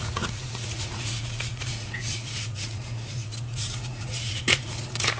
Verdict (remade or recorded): remade